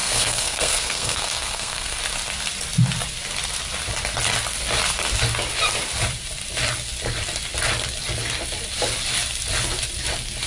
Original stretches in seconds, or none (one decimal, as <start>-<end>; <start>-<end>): 2.0-10.5